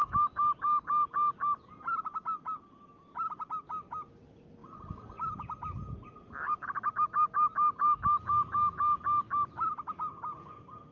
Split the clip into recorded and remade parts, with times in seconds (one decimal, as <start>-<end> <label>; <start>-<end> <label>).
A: 0.0-10.9 recorded